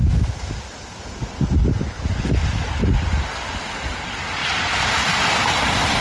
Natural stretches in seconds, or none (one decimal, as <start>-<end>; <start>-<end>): 0.0-4.4; 5.2-6.0